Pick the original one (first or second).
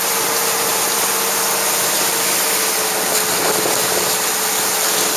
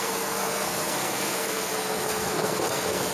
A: first